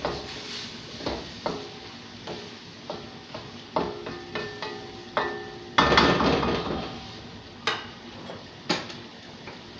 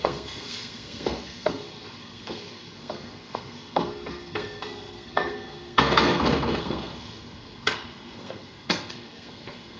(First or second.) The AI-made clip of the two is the second